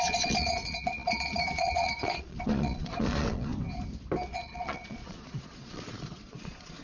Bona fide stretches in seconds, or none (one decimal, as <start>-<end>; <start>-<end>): 3.5-4.3